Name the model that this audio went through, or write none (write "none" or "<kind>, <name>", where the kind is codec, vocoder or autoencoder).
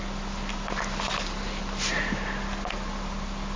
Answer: none